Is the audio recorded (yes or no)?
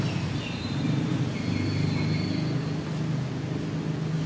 yes